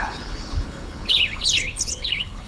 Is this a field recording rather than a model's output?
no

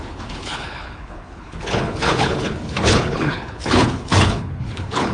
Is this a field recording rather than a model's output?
no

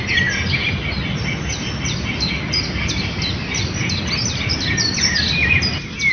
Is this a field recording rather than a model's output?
yes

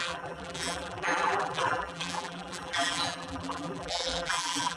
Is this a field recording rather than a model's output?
no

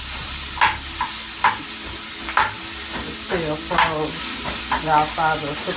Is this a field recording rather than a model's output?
yes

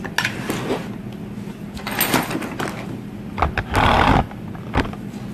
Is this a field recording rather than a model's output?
yes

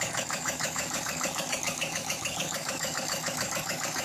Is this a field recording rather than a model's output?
no